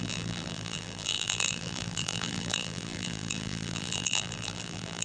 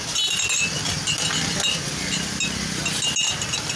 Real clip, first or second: second